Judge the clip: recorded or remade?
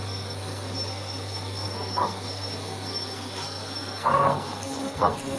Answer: remade